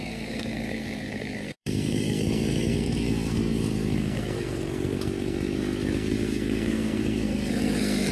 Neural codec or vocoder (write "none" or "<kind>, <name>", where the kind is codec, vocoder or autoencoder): codec, SNAC